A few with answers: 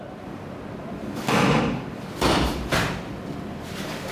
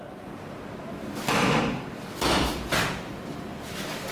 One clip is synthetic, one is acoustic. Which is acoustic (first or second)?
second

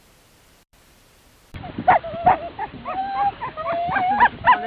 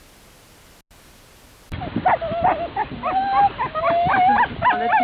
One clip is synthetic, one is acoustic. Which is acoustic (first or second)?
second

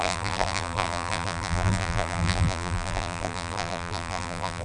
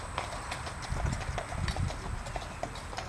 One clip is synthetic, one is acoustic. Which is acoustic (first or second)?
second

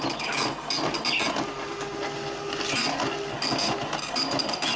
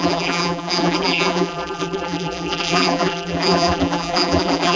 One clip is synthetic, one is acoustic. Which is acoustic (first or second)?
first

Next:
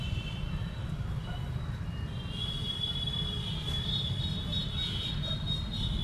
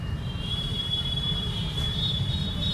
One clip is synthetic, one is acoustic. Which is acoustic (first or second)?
first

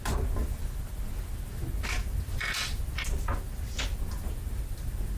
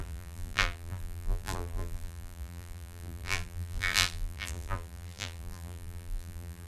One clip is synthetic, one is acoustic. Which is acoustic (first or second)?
first